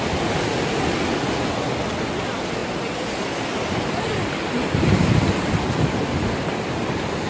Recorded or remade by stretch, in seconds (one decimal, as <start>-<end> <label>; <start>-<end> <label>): 0.0-7.3 recorded